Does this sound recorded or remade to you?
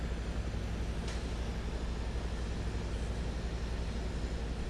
recorded